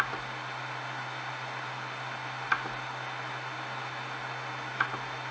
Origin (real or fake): real